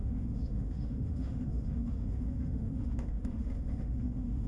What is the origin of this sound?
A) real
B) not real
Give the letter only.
B